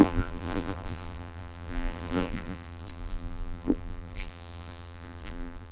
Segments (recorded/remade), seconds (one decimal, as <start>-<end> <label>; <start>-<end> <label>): 0.0-5.7 remade